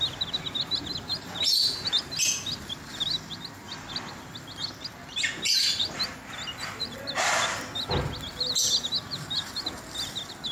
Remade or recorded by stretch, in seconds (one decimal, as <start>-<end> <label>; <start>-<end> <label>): 0.0-1.1 recorded; 1.1-2.0 remade; 2.0-10.5 recorded